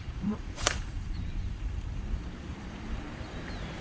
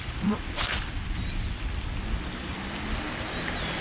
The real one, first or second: second